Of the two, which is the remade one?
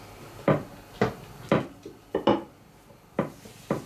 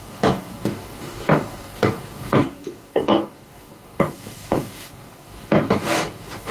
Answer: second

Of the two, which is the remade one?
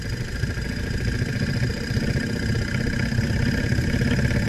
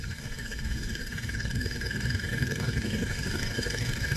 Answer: second